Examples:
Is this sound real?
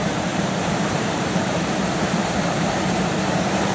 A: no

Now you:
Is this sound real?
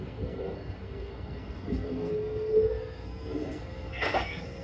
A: no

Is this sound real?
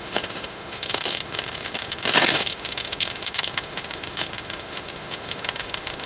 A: no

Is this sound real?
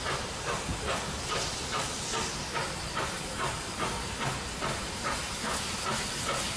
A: yes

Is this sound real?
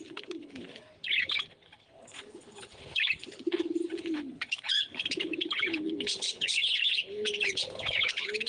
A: no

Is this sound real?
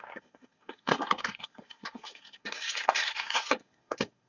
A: no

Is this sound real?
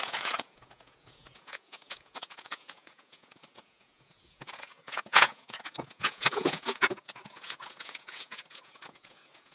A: no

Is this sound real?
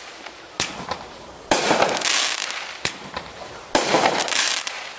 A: no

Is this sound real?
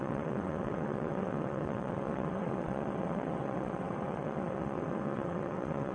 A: no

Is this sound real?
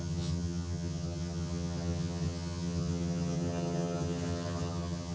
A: no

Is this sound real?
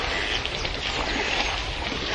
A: yes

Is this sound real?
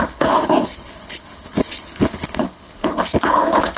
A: no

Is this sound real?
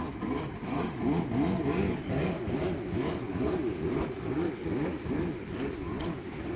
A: yes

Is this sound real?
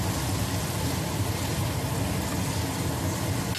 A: yes